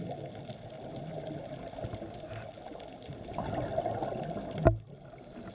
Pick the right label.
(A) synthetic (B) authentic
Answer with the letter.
B